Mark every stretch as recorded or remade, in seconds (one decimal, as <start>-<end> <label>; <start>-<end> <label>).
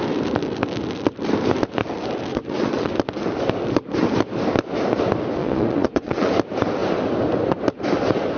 0.0-2.3 recorded; 2.3-2.9 remade; 2.9-5.4 recorded; 5.4-6.3 remade; 6.3-8.4 recorded